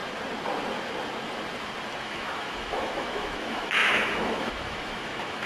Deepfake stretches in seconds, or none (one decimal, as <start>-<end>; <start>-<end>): 2.0-5.5

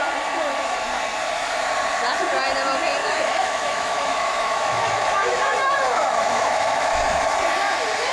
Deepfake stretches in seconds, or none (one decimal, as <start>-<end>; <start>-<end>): 3.0-7.3

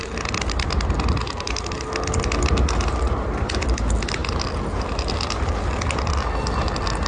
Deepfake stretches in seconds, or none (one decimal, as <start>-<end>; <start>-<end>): none

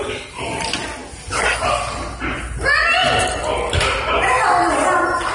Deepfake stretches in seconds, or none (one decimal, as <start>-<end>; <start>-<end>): none